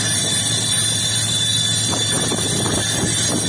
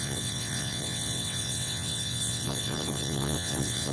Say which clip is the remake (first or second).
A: second